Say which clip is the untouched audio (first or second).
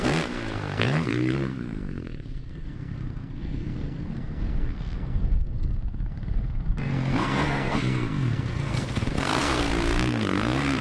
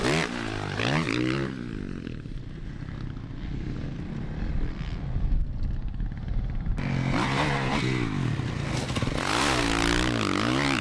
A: second